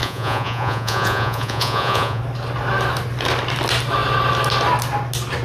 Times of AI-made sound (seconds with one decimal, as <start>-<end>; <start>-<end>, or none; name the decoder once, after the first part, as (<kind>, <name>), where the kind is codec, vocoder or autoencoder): 0.0-2.2 (vocoder, Vocos)